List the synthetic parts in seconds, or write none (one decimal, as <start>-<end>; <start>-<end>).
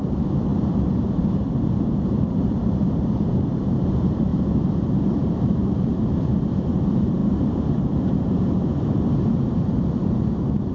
0.0-10.7